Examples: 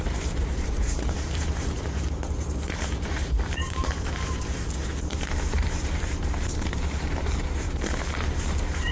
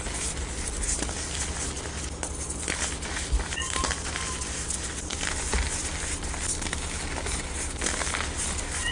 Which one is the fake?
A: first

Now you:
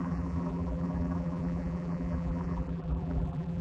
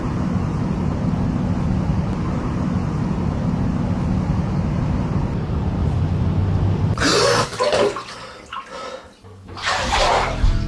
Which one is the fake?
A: first